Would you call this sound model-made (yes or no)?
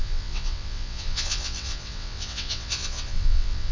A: yes